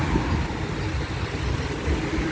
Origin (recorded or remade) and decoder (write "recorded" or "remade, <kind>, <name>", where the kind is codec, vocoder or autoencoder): recorded